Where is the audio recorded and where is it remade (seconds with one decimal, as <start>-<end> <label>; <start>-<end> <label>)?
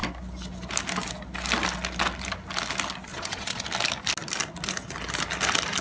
0.0-3.1 recorded; 3.1-3.6 remade; 3.6-5.8 recorded